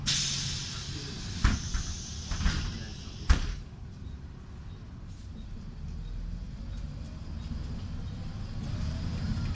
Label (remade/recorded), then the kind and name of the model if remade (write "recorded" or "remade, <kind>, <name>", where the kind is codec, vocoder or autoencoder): recorded